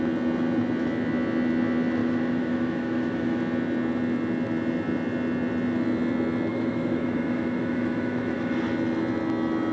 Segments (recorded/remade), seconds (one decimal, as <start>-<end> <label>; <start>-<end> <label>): 0.0-2.0 recorded; 2.0-3.4 remade; 3.4-6.5 recorded; 6.5-8.5 remade; 8.5-9.7 recorded